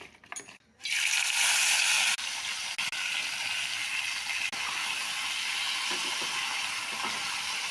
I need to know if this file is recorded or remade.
recorded